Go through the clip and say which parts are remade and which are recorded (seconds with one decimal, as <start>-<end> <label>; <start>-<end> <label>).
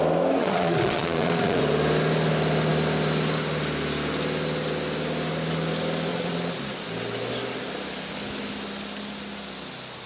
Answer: 0.0-0.4 recorded; 0.4-1.6 remade; 1.6-6.1 recorded; 6.1-6.6 remade; 6.6-10.1 recorded